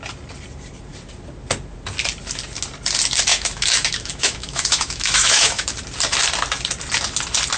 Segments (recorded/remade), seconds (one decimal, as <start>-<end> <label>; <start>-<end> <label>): 0.0-3.3 recorded; 3.3-5.7 remade; 5.7-7.6 recorded